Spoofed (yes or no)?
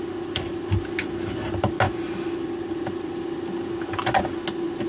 no